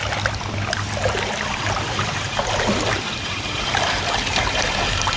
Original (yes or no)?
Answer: yes